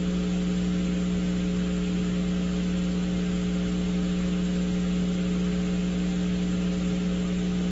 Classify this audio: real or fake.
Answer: real